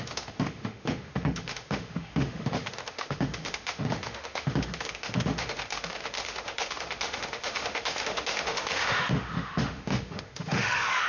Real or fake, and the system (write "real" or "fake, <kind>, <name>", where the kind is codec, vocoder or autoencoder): fake, autoencoder, DAC-VAE